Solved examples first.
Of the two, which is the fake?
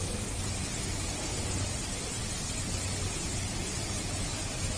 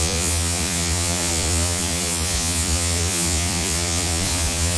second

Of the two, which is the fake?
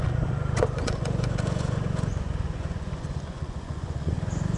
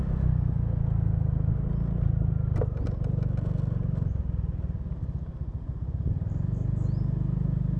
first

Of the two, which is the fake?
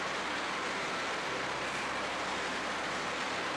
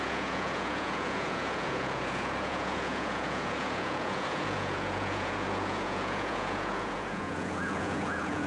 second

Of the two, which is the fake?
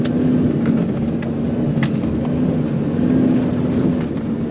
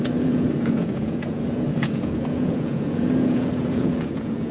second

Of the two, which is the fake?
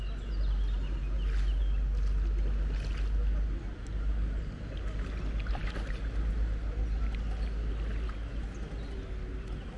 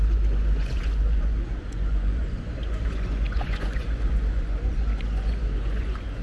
second